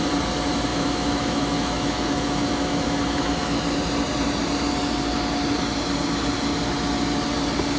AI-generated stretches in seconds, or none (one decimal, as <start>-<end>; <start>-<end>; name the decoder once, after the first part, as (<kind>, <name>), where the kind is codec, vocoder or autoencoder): 0.7-3.6 (autoencoder, DAC-VAE)